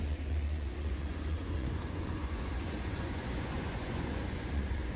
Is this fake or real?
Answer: fake